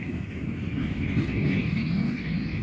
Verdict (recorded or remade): remade